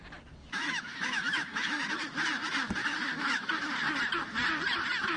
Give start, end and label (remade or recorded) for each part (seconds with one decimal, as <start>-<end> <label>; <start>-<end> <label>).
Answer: 0.0-0.4 recorded; 0.4-1.9 remade; 1.9-2.8 recorded; 2.8-3.8 remade; 3.8-5.2 recorded